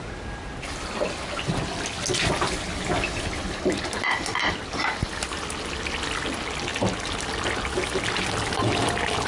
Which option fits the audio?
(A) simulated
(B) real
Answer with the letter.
B